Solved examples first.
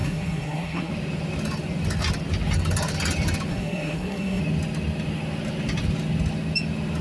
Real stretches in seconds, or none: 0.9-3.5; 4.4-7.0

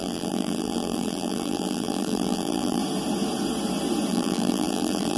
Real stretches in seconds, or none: 2.8-4.1

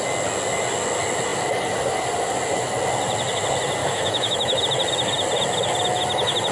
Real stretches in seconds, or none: 0.0-3.8; 4.6-6.5

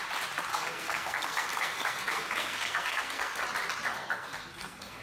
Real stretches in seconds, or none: 0.0-0.5; 3.4-3.9

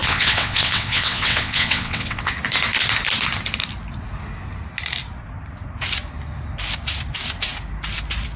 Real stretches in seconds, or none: 2.3-8.4